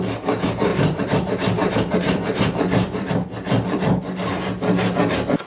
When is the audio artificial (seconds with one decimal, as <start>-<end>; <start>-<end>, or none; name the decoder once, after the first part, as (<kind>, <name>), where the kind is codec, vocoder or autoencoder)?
0.7-3.1 (vocoder, BigVGAN v2)